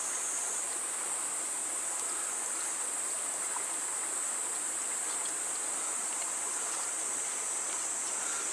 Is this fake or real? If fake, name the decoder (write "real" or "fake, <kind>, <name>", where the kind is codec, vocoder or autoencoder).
real